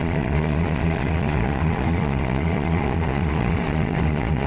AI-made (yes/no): yes